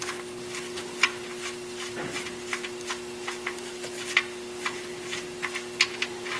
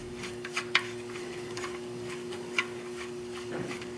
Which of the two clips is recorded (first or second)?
first